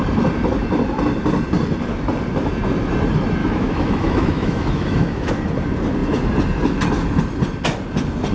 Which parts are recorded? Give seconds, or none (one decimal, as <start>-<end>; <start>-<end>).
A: 0.0-3.4; 5.3-8.3